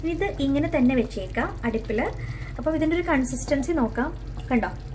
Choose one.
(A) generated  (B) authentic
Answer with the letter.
B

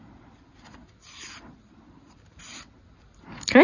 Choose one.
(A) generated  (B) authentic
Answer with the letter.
B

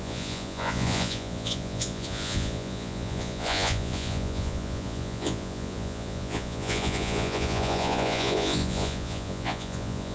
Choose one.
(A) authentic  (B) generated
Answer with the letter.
B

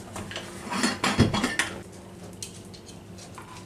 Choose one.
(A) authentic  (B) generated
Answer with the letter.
A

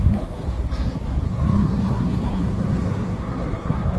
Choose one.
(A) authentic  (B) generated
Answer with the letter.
B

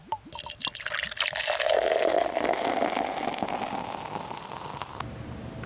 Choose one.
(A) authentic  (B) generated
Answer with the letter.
A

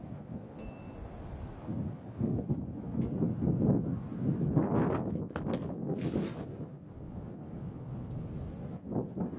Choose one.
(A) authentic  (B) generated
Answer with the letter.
A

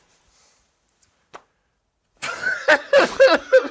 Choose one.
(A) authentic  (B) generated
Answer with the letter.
B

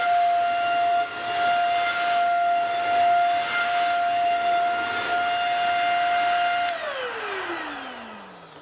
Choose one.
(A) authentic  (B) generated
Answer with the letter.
A